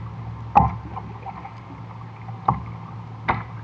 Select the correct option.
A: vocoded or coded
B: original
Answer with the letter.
B